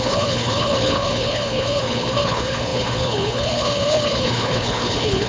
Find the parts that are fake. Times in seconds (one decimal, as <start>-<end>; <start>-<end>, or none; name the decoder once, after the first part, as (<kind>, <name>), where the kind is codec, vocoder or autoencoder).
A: 0.0-5.3 (codec, HILCodec)